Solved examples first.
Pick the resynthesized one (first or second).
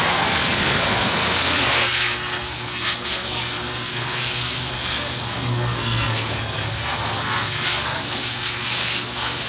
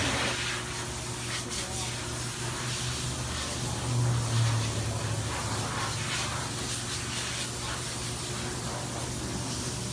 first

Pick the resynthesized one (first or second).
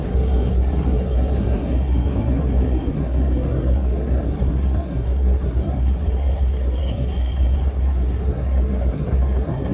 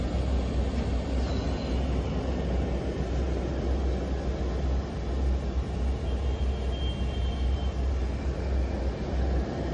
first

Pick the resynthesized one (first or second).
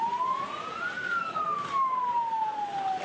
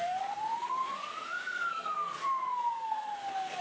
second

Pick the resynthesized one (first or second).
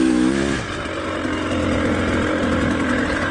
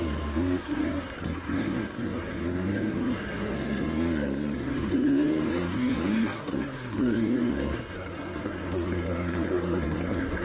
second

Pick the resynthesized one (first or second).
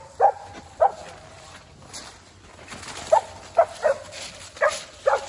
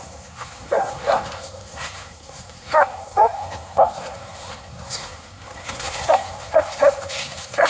second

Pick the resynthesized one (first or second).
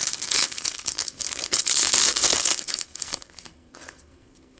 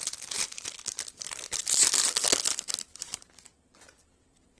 first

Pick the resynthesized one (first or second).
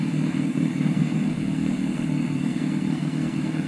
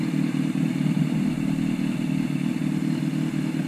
first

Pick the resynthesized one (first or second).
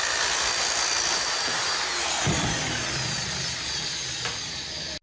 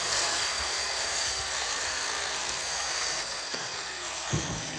second